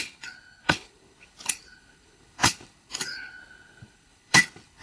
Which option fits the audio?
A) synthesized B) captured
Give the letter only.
A